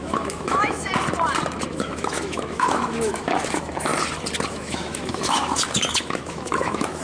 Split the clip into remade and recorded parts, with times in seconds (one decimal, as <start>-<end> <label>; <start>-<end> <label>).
0.0-0.9 remade; 0.9-1.7 recorded; 1.7-3.9 remade; 3.9-4.5 recorded; 4.5-7.0 remade